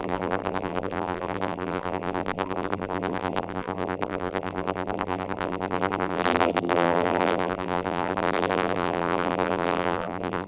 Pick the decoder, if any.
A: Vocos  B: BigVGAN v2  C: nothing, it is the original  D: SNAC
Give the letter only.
B